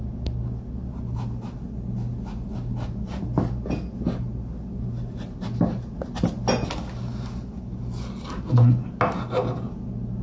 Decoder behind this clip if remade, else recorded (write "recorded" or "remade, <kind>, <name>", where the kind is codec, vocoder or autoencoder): recorded